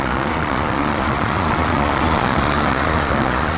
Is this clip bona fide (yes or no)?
no